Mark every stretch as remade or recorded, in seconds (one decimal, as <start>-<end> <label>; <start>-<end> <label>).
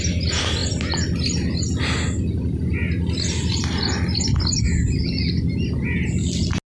0.0-6.7 recorded